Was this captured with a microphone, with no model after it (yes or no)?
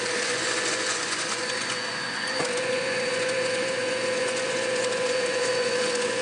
no